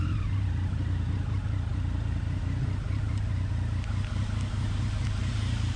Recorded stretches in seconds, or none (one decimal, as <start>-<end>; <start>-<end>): 0.0-5.8